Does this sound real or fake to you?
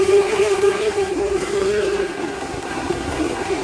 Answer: fake